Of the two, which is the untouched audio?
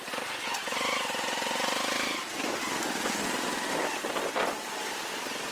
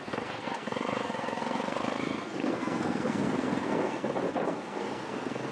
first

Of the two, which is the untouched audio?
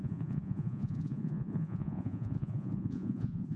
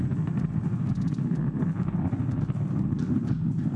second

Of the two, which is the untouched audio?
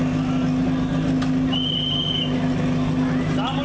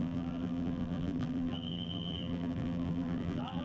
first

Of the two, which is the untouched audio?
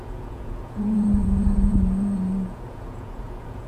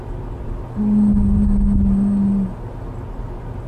second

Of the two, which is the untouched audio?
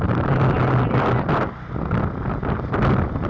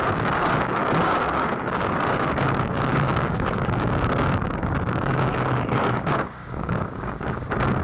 first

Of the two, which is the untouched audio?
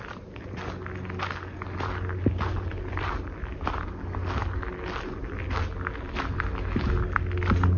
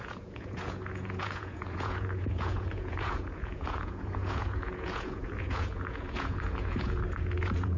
first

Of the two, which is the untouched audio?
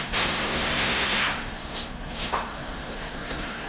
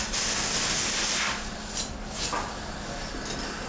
second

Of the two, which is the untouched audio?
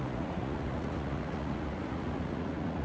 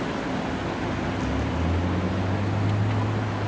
second